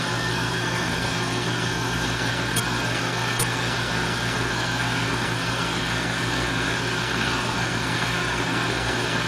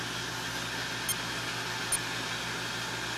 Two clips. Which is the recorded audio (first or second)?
second